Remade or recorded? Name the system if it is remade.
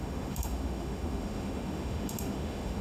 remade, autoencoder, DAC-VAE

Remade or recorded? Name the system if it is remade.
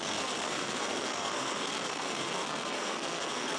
remade, codec, SNAC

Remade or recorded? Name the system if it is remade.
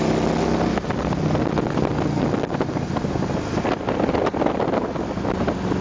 recorded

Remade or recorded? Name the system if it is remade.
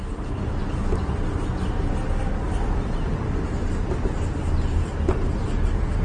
recorded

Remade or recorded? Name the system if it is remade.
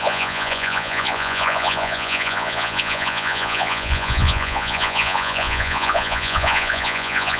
remade, vocoder, Vocos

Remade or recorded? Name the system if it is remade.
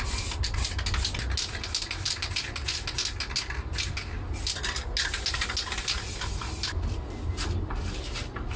recorded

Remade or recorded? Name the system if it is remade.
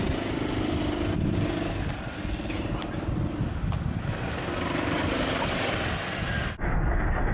recorded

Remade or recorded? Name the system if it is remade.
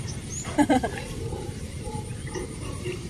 remade, vocoder, BigVGAN v2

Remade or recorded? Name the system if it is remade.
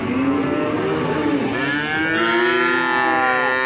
recorded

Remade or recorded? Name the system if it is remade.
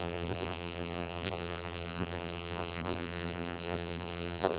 remade, vocoder, BigVGAN v2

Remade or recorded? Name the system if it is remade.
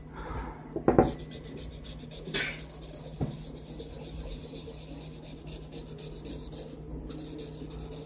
recorded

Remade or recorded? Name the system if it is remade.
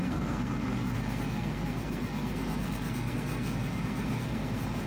remade, codec, SNAC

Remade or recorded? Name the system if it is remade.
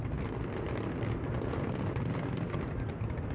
recorded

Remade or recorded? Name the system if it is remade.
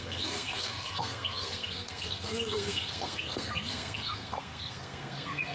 remade, codec, SNAC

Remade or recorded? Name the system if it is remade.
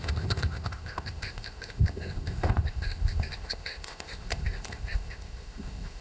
remade, codec, ZipCodec